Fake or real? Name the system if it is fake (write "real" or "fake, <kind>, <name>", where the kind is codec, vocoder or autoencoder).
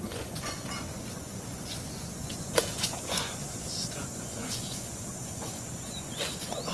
fake, vocoder, Vocos